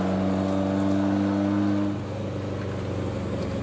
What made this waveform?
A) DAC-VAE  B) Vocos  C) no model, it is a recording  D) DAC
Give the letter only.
C